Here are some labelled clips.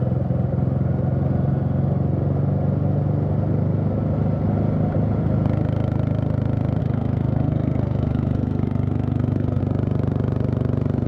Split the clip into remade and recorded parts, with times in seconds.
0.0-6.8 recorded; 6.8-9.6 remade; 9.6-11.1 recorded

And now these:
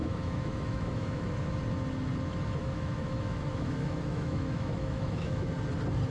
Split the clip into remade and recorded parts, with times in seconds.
0.0-1.2 remade; 1.2-2.6 recorded; 2.6-5.5 remade; 5.5-6.1 recorded

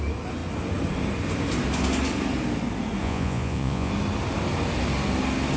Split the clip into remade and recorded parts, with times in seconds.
0.0-3.0 recorded; 3.0-3.9 remade; 3.9-5.6 recorded

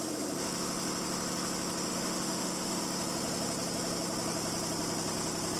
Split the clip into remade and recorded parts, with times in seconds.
0.0-1.9 recorded; 1.9-2.8 remade; 2.8-5.6 recorded